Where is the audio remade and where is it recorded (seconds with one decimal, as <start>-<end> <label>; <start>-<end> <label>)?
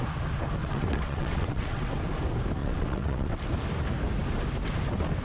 0.0-0.6 recorded; 0.6-1.9 remade; 1.9-2.6 recorded; 2.6-3.5 remade; 3.5-5.2 recorded